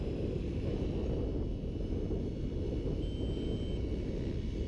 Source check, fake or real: real